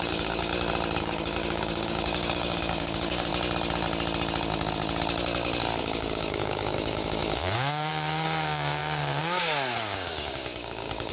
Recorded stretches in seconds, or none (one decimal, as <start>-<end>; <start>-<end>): 0.5-1.0; 3.3-5.8